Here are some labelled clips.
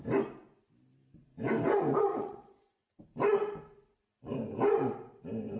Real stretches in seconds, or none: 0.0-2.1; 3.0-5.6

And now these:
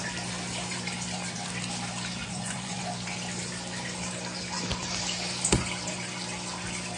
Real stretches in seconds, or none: 0.0-2.2; 2.8-7.0

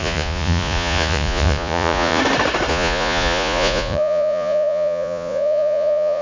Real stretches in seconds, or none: 2.2-2.7

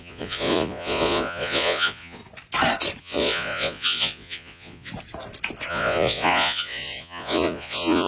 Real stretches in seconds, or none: 2.2-3.0; 4.9-5.7

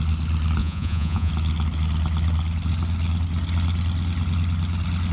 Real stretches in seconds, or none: 0.0-0.6; 1.3-5.1

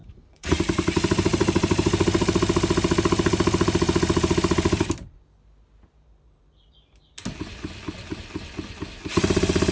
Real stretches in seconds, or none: 0.6-9.7